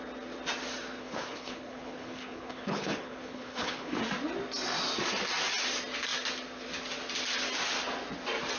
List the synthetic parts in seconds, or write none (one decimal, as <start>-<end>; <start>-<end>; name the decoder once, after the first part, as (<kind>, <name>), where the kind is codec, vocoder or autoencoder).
1.0-4.0 (codec, HILCodec)